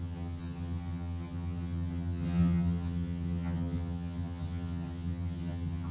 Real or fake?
fake